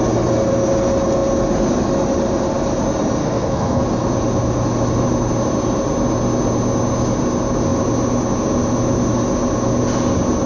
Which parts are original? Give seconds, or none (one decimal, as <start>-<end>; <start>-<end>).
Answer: 0.0-3.2; 3.8-10.5